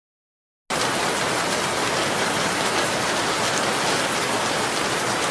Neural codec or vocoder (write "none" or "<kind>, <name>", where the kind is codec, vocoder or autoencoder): none